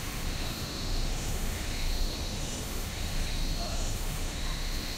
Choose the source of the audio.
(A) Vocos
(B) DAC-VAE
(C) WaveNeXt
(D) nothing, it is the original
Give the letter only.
B